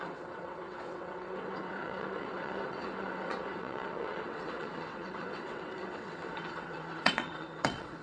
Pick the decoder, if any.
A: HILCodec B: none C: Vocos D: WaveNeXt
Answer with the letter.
D